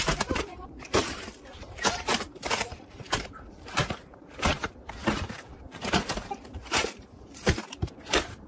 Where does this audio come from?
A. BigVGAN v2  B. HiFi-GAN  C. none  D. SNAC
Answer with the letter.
A